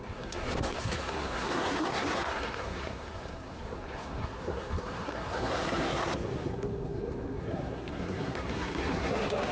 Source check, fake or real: fake